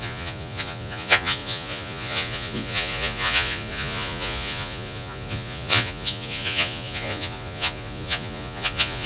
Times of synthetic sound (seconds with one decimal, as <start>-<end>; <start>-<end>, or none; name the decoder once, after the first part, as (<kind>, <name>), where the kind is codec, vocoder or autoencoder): 0.0-9.1 (vocoder, Vocos)